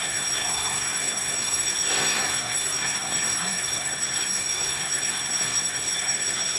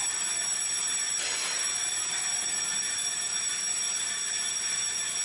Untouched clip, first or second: second